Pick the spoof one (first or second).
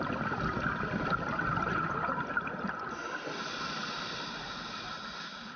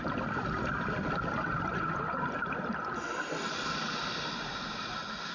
first